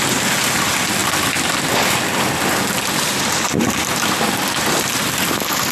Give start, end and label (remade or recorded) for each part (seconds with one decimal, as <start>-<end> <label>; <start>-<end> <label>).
0.0-1.0 recorded; 1.0-1.7 remade; 1.7-5.7 recorded